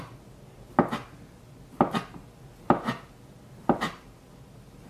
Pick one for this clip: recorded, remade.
recorded